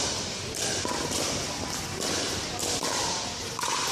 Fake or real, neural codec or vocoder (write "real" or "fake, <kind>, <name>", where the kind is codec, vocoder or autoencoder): real